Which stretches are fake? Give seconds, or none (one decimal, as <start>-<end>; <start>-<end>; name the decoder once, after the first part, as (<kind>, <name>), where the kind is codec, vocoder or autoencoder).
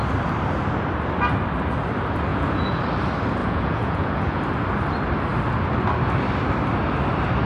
2.3-2.8 (vocoder, Vocos); 3.4-4.4